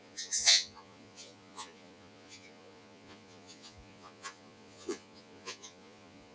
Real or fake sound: fake